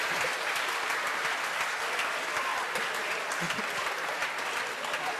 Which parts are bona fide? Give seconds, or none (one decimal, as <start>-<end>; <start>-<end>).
0.0-5.2